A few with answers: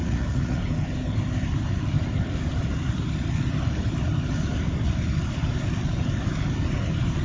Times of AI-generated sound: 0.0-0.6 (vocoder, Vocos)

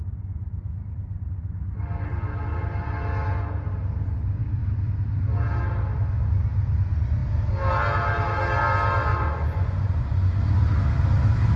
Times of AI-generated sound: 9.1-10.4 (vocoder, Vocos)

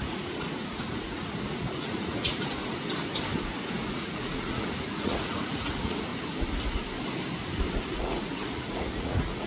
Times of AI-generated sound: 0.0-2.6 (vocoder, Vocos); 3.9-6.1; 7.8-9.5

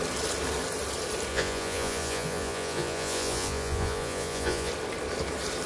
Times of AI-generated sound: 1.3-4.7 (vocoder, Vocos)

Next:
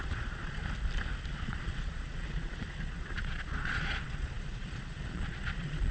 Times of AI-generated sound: 0.0-0.6 (vocoder, Vocos); 1.3-5.9

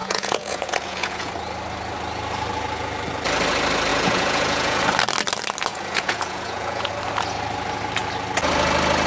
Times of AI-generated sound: 0.0-1.3 (vocoder, Vocos); 3.9-4.8; 5.7-6.9

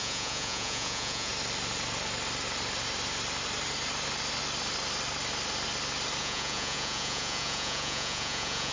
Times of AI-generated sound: 0.0-1.3 (vocoder, Vocos); 6.2-8.7

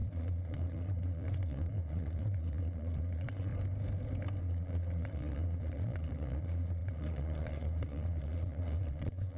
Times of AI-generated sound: 0.0-3.5 (vocoder, Vocos); 4.4-9.4